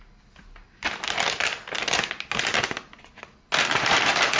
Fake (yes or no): no